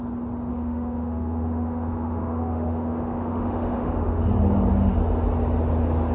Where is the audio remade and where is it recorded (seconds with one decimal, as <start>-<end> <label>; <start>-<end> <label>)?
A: 0.0-0.5 recorded; 0.5-4.2 remade; 4.2-6.1 recorded